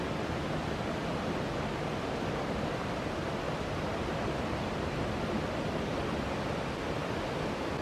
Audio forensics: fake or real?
real